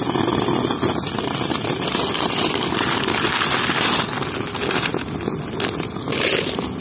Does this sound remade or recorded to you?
recorded